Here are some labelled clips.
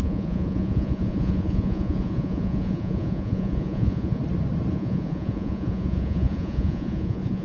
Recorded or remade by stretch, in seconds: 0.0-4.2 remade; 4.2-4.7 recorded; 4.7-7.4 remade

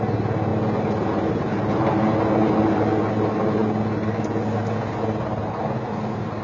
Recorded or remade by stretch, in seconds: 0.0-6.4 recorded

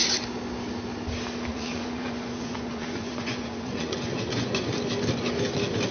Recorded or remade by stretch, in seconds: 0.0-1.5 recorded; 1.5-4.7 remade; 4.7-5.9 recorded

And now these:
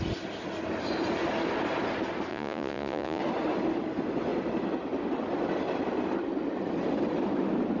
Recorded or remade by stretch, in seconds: 0.0-2.3 recorded; 2.3-3.2 remade; 3.2-7.8 recorded

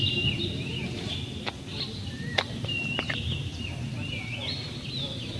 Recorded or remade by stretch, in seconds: 0.0-5.4 recorded

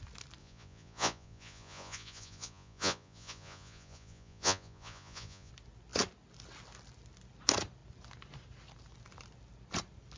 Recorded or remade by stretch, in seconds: 0.0-0.4 recorded; 0.4-5.5 remade; 5.5-10.2 recorded

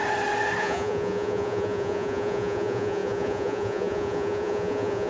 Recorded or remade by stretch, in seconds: 0.0-0.6 recorded; 0.6-5.1 remade